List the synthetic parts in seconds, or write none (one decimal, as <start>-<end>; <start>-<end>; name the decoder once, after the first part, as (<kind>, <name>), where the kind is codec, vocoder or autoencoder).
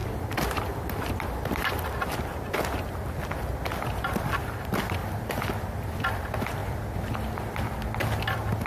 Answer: 0.0-1.8 (vocoder, BigVGAN v2); 5.0-5.5